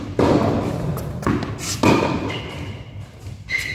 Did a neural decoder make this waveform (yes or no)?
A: no